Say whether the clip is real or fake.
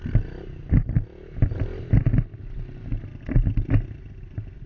real